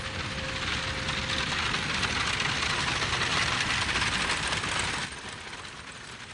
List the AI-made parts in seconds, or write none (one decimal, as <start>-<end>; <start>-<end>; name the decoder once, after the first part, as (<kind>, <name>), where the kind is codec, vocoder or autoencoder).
none